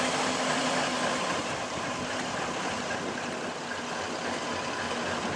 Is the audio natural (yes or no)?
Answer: yes